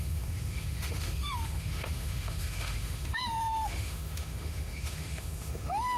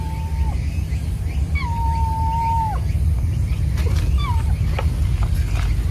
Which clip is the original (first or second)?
second